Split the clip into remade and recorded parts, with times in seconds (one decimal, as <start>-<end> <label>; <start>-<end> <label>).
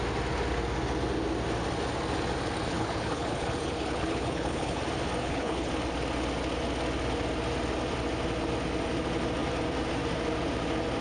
0.0-2.7 recorded; 2.7-4.8 remade; 4.8-5.2 recorded; 5.2-5.7 remade; 5.7-11.0 recorded